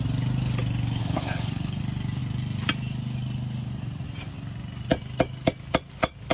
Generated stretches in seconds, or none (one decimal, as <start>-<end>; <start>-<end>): 1.0-1.8